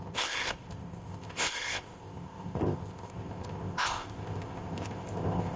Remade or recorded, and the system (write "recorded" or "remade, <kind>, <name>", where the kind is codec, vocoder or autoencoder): remade, codec, ZipCodec